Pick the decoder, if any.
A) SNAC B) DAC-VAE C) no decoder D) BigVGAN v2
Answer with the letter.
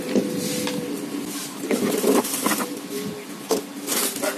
C